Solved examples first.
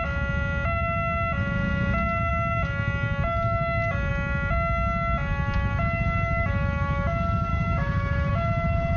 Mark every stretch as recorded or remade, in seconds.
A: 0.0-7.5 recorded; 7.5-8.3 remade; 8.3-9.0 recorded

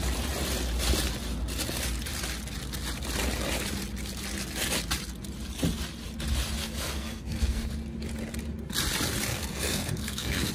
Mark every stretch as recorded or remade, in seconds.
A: 0.0-6.6 recorded; 6.6-7.7 remade; 7.7-9.3 recorded; 9.3-10.5 remade

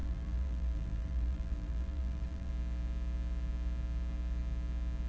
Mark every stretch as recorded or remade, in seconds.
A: 0.0-2.5 remade; 2.5-5.1 recorded

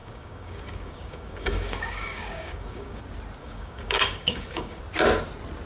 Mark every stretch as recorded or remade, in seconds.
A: 0.0-3.0 remade; 3.0-3.4 recorded; 3.4-4.8 remade; 4.8-5.7 recorded

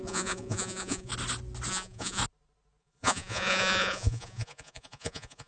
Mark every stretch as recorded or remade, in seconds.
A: 0.0-1.1 remade; 1.1-1.7 recorded; 1.7-2.2 remade; 2.2-2.8 recorded; 2.8-5.5 remade

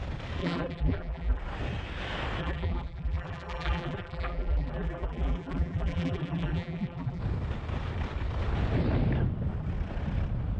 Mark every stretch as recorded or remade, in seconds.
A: 0.0-0.4 recorded; 0.4-1.4 remade; 1.4-2.4 recorded; 2.4-7.2 remade; 7.2-10.6 recorded